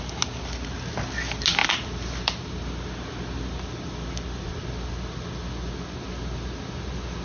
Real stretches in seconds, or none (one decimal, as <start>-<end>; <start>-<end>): 0.0-1.6; 2.5-7.2